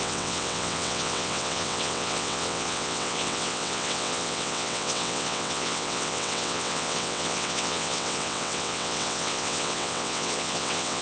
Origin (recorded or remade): remade